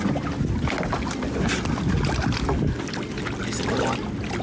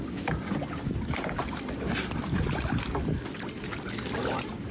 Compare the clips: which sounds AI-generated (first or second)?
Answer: second